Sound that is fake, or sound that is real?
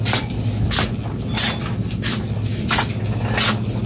real